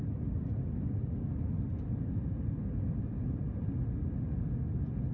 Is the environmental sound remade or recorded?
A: recorded